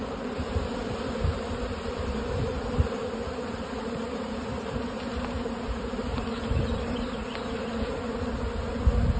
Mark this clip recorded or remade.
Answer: remade